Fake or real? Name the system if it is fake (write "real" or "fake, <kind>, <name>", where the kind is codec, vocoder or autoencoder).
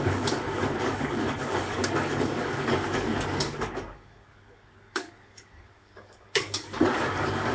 fake, codec, DAC